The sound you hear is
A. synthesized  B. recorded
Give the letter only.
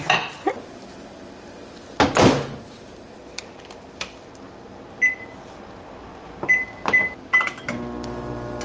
B